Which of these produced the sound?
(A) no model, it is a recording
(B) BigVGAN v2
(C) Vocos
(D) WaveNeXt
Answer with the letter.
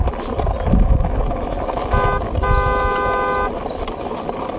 A